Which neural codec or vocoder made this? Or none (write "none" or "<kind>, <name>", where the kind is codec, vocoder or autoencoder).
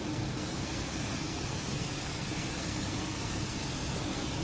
codec, SNAC